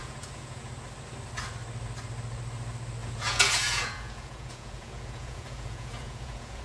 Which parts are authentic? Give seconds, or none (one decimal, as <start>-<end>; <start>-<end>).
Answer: 0.7-3.0